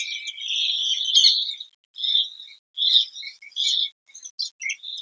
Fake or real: real